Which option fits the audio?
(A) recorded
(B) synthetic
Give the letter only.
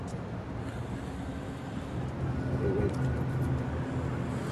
A